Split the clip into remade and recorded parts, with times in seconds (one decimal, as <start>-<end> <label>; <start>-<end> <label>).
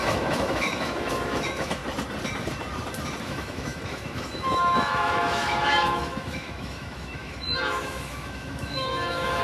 0.0-1.8 remade; 1.8-3.2 recorded; 3.2-9.4 remade